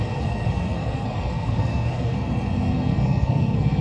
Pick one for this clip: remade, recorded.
remade